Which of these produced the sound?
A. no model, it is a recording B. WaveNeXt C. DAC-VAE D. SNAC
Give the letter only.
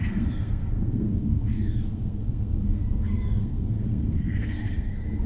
D